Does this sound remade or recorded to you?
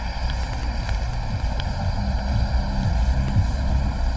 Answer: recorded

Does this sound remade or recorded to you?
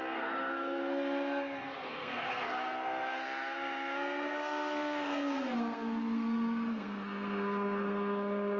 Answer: remade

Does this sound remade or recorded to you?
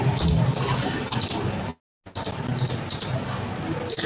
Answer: recorded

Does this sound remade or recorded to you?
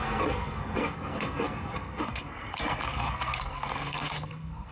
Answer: remade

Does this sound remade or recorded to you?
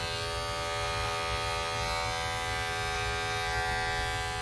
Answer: recorded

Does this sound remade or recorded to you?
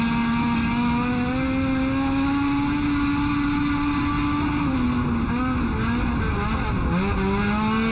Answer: recorded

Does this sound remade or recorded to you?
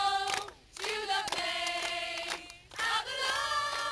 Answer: recorded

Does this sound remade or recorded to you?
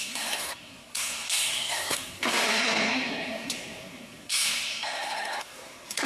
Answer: remade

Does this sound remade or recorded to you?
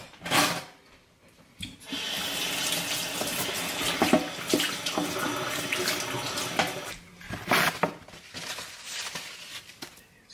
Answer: recorded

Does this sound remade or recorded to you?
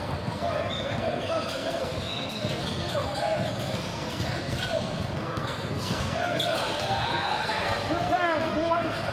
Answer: remade